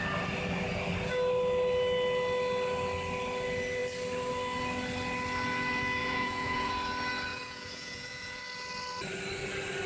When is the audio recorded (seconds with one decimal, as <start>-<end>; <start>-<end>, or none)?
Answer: 0.0-6.0; 6.7-7.3; 8.4-9.9